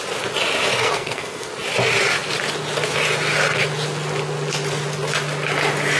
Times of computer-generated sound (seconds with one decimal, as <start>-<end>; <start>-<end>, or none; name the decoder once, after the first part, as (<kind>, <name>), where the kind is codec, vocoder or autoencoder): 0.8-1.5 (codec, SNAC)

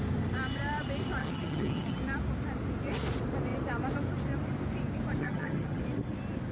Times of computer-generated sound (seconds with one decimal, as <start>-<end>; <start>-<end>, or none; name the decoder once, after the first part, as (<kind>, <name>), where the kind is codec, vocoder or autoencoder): 1.2-2.0 (vocoder, HiFi-GAN); 5.2-5.8

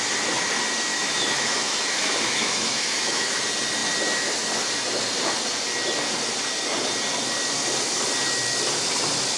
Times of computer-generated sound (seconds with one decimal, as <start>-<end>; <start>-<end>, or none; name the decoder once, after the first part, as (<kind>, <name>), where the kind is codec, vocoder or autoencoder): 0.9-3.4 (autoencoder, DAC-VAE)

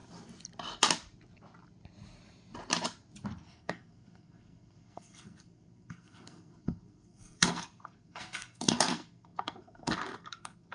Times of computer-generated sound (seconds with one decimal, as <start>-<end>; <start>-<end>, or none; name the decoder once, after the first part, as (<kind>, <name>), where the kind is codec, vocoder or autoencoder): 3.5-10.7 (codec, SNAC)